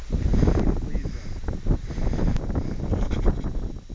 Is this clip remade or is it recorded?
recorded